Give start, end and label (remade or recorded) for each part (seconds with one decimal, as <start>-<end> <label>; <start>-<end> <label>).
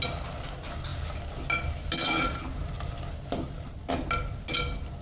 0.0-5.0 recorded